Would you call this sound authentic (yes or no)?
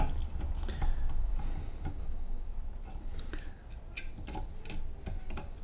yes